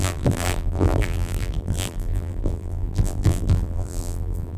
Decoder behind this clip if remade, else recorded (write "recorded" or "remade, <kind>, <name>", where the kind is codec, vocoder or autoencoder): remade, vocoder, BigVGAN v2